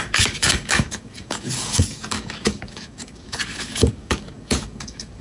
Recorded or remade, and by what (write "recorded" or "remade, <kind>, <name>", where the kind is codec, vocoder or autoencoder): remade, codec, DAC